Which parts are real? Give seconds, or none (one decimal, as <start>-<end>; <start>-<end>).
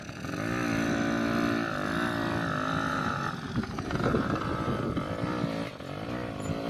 0.0-2.9; 4.9-6.7